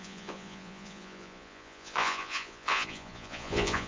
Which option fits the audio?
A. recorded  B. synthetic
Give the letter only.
B